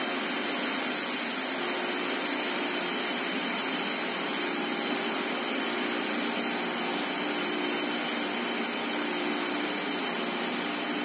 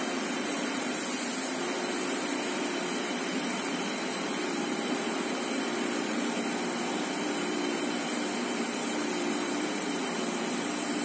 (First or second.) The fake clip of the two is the second